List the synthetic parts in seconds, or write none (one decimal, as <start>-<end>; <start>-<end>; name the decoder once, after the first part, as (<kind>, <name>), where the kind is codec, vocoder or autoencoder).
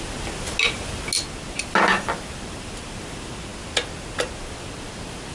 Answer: none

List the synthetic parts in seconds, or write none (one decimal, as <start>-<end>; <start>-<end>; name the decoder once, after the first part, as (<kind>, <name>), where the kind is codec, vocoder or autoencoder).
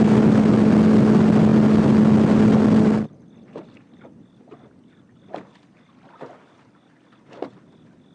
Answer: none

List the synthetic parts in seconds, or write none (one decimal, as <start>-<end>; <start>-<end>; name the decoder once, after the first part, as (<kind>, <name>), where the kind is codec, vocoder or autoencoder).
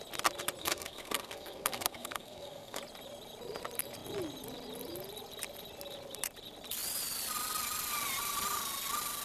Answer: 0.6-2.8 (codec, SNAC)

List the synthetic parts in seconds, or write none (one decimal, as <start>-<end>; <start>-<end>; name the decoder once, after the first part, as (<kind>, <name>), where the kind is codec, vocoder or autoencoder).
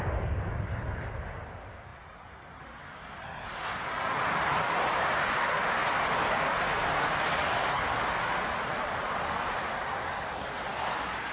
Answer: none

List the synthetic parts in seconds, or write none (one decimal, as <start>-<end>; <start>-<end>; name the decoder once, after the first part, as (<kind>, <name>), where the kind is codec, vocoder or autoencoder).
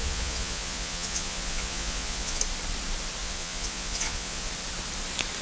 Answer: 0.0-2.4 (vocoder, Vocos); 3.2-4.5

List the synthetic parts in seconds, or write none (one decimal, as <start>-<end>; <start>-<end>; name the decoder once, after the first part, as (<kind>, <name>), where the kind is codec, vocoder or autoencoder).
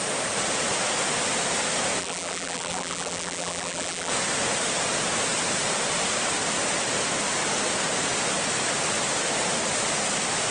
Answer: 2.0-4.1 (vocoder, BigVGAN v2)